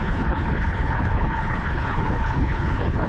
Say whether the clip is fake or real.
fake